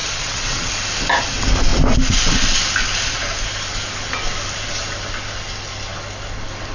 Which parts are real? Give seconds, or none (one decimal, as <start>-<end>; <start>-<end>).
0.7-6.7